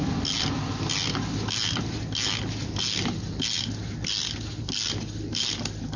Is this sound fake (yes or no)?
no